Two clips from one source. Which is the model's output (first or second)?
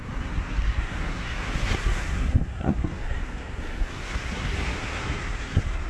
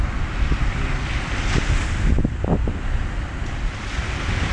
first